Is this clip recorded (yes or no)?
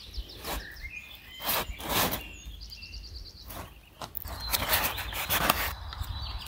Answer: yes